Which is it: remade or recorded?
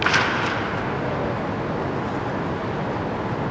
recorded